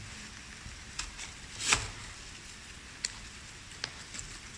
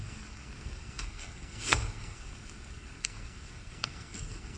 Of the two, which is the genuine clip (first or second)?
first